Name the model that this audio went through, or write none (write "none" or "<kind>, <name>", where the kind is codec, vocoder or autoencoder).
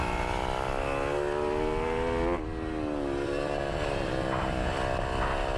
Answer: none